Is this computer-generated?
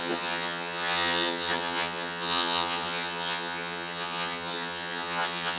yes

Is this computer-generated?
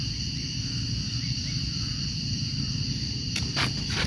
no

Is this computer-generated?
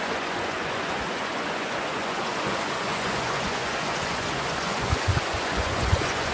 yes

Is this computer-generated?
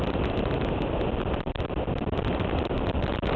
no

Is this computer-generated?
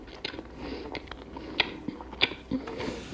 no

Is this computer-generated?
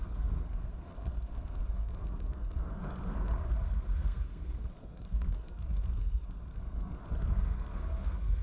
yes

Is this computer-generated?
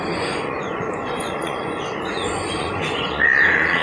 yes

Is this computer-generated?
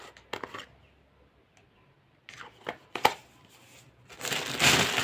no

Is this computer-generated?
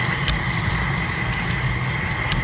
no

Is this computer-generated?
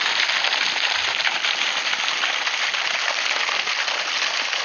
no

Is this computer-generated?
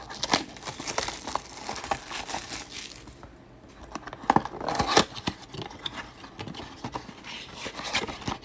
no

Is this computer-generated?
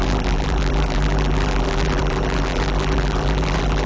yes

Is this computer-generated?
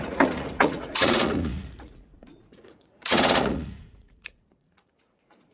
yes